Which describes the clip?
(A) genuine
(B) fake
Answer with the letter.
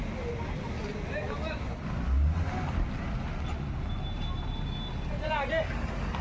A